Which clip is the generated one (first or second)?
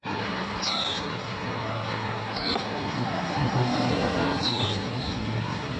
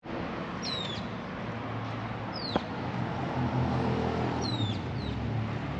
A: first